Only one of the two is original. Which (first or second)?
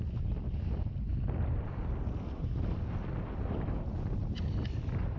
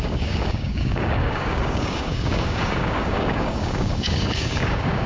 first